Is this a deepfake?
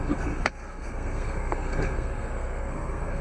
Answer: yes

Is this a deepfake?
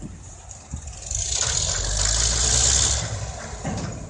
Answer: no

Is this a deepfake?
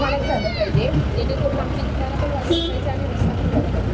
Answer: no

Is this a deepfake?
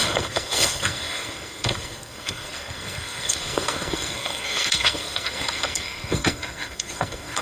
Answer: yes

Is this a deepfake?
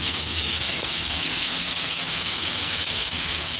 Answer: yes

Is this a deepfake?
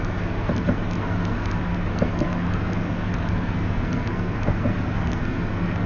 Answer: yes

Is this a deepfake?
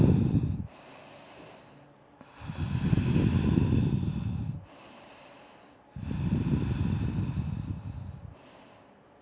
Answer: no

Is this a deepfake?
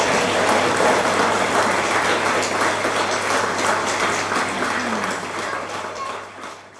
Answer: no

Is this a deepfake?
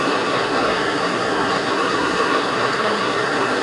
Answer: yes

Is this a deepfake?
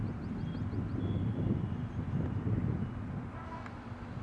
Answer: no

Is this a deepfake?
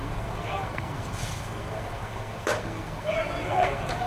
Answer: yes